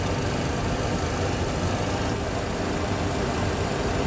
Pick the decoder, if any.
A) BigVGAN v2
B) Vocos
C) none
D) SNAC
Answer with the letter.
C